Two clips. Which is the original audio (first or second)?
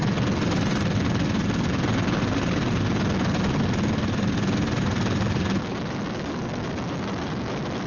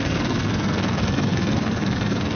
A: first